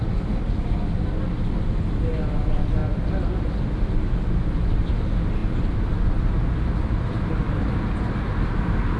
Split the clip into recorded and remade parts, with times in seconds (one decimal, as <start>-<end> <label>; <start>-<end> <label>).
0.0-9.0 recorded